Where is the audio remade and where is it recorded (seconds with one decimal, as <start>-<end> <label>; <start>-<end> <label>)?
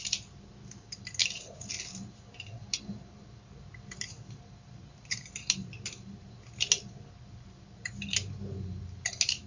0.0-9.5 recorded